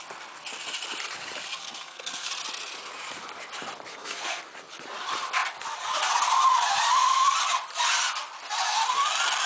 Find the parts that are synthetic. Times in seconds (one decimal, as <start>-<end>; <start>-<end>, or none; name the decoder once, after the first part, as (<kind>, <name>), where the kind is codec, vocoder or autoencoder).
1.6-2.3 (codec, SNAC); 3.9-4.4